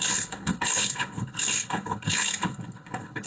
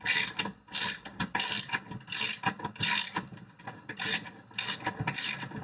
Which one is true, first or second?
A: second